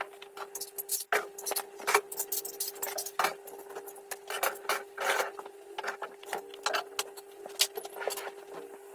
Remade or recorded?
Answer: recorded